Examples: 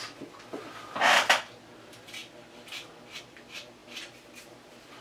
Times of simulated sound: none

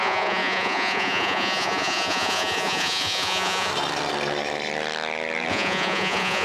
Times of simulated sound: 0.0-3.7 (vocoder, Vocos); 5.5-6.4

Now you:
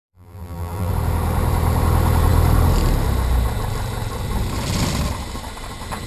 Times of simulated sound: 0.0-0.9 (vocoder, BigVGAN v2)